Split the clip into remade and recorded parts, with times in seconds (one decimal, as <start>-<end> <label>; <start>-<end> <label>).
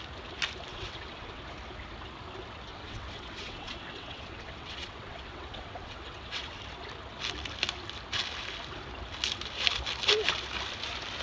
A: 0.0-0.7 recorded; 0.7-1.4 remade; 1.4-2.7 recorded; 2.7-6.6 remade; 6.6-11.2 recorded